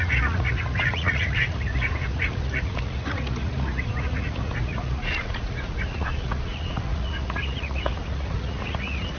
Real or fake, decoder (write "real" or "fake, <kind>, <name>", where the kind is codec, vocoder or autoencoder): fake, vocoder, Vocos